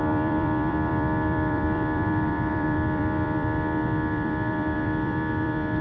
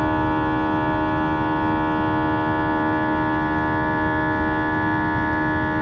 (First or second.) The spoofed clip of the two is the first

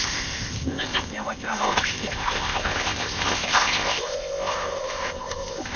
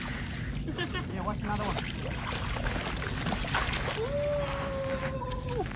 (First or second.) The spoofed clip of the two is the first